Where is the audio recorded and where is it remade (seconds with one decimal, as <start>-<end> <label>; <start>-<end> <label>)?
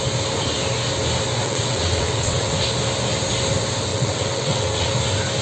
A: 0.0-1.4 recorded; 1.4-2.5 remade; 2.5-3.9 recorded; 3.9-4.9 remade; 4.9-5.4 recorded